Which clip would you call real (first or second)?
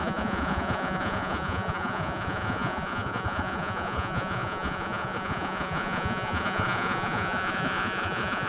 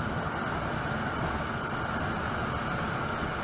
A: second